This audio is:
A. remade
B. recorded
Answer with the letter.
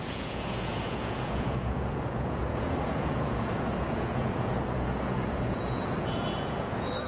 A